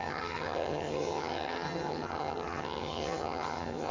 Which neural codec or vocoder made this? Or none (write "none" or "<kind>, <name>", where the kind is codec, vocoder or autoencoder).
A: vocoder, HiFi-GAN